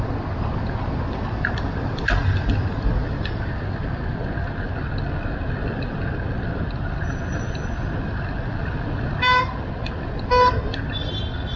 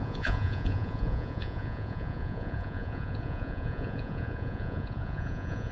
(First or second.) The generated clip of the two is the second